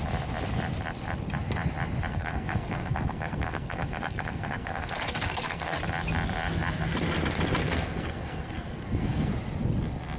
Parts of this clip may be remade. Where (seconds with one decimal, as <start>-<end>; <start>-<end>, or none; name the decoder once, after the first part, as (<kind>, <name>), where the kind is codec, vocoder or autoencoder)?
2.1-5.8 (codec, SNAC); 7.6-9.3